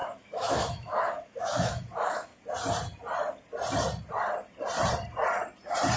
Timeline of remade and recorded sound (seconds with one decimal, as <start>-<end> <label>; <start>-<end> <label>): 0.0-2.3 remade; 2.3-6.0 recorded